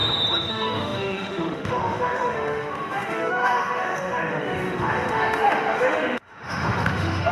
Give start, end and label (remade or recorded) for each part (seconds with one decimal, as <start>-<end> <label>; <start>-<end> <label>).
0.0-0.5 recorded; 0.5-7.3 remade